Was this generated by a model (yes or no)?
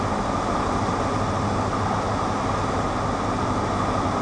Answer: no